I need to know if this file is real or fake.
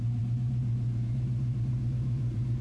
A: fake